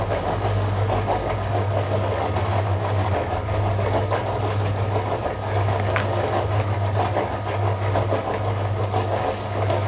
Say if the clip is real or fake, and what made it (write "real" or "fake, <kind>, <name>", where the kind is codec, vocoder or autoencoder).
fake, codec, DAC